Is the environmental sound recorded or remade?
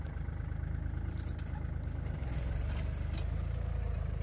recorded